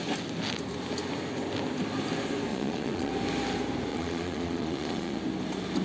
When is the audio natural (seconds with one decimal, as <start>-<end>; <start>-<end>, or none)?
0.0-2.5; 3.1-3.9; 5.2-5.8